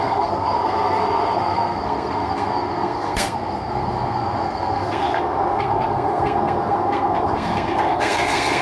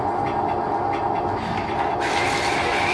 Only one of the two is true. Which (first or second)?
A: second